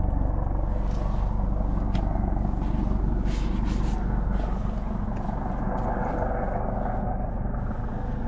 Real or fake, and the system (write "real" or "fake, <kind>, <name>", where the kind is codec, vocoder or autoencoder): real